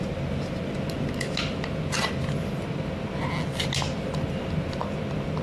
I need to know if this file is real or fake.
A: real